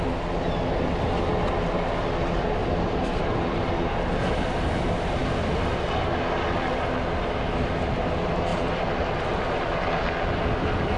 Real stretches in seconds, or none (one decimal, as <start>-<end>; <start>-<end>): 0.0-2.6; 4.8-8.5; 9.8-11.0